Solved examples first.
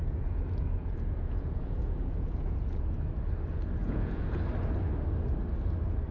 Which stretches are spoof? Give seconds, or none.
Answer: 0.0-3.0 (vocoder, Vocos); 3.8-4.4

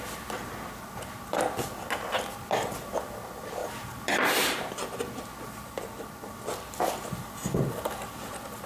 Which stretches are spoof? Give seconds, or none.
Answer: 3.6-4.7 (vocoder, BigVGAN v2)

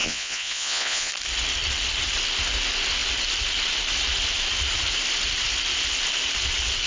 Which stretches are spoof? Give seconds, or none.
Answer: 0.0-1.1 (vocoder, Vocos)

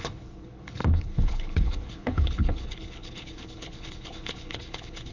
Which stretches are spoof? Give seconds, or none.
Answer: 0.0-5.1 (codec, HILCodec)

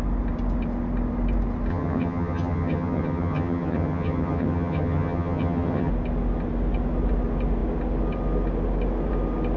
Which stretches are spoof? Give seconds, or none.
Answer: 1.7-5.9 (vocoder, HiFi-GAN)